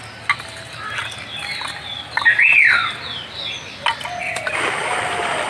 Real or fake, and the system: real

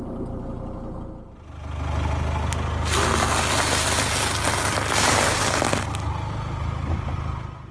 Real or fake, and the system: real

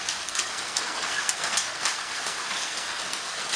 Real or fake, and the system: fake, codec, SNAC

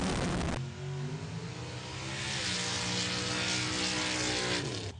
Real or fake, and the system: real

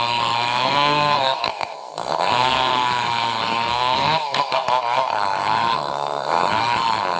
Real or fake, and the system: fake, codec, SNAC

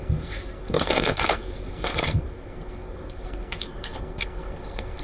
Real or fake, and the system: fake, codec, SNAC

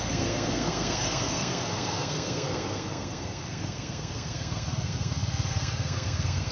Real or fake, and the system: fake, codec, SNAC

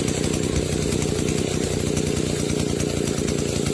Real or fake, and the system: real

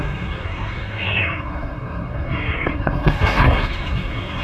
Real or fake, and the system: fake, codec, SNAC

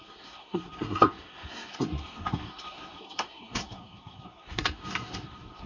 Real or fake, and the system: fake, codec, SNAC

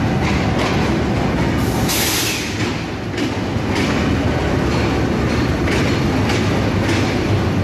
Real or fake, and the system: real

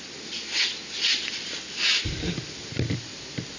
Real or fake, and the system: real